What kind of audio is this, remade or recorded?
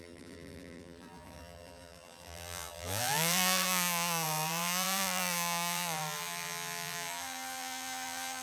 remade